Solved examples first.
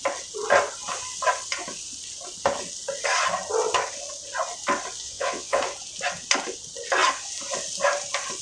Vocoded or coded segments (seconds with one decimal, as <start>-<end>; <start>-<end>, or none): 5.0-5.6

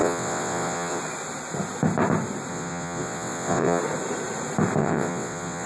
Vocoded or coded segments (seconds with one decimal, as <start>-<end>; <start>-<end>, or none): 0.0-1.0; 2.5-3.8; 4.8-5.7

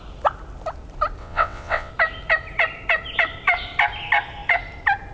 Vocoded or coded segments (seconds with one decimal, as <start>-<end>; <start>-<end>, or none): 1.2-1.9

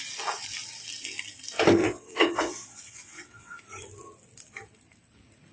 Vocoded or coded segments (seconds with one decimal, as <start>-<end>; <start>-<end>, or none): 1.8-3.6

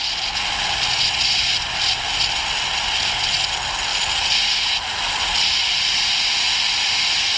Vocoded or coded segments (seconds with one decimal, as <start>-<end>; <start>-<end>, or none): none

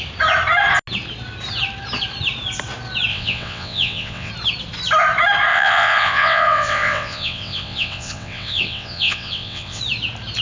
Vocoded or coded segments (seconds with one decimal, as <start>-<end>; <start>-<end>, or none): 3.1-4.3; 5.5-9.8